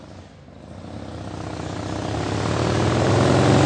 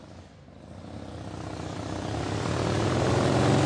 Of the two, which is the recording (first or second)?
first